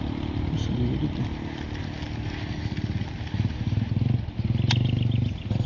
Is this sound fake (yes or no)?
no